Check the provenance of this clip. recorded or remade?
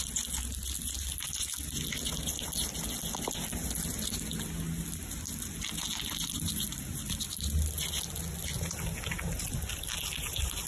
recorded